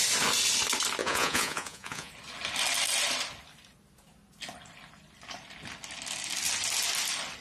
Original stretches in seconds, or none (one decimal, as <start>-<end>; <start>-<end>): 0.0-1.0; 2.1-7.4